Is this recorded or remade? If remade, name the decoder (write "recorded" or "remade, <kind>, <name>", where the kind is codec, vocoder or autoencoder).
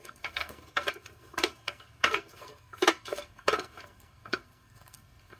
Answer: remade, codec, SNAC